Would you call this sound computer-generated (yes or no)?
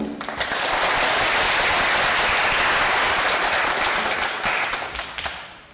no